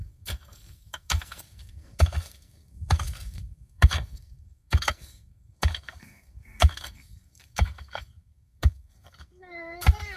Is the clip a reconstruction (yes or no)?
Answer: yes